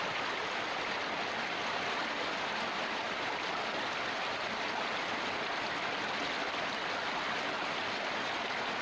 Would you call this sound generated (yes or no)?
no